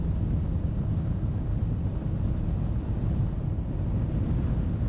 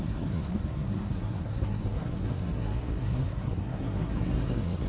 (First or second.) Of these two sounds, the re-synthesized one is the second